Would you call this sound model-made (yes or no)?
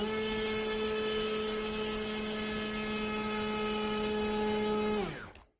no